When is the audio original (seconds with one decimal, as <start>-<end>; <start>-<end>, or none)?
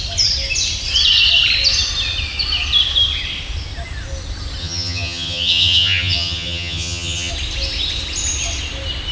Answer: 0.0-4.6; 7.3-9.1